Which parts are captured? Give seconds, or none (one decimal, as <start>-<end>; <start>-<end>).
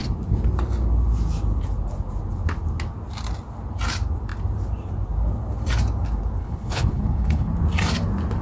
0.0-6.4; 7.5-8.4